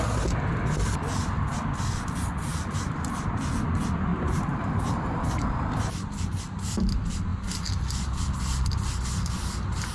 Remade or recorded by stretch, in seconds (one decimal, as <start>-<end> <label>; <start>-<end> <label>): 0.0-2.5 recorded; 2.5-3.4 remade; 3.4-4.1 recorded; 4.1-6.4 remade; 6.4-9.9 recorded